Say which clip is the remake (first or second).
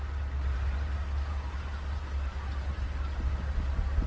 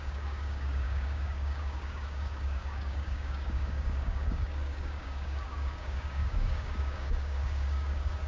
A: second